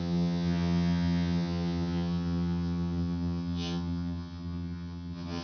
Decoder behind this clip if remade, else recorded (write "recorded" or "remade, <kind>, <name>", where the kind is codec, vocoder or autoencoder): remade, vocoder, HiFi-GAN